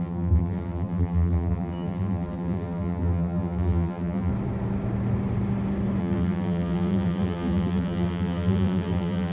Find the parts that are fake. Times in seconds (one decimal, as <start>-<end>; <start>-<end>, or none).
0.0-4.3; 6.0-9.3

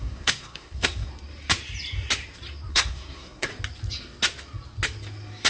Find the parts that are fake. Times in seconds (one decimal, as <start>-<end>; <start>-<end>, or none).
0.0-1.1; 2.7-3.5

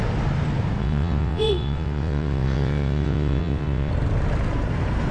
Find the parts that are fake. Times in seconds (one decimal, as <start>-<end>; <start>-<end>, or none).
0.8-3.9

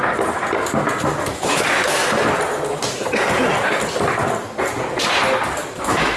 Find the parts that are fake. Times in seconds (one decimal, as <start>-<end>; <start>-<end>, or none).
1.3-2.0; 5.7-6.2

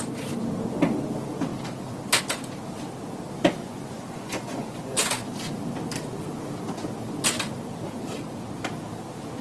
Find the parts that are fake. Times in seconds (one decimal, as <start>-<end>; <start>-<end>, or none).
3.6-5.2

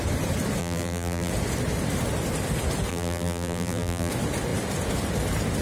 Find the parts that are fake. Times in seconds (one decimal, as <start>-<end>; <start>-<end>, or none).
0.6-1.3; 2.9-4.1